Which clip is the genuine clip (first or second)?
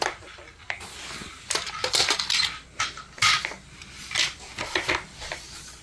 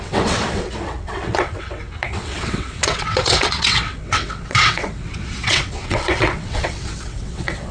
first